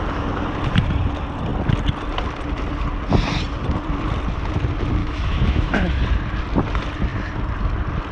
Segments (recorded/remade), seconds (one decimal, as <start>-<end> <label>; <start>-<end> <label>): 0.0-5.0 recorded; 5.0-6.0 remade; 6.0-8.1 recorded